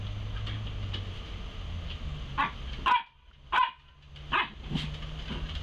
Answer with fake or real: real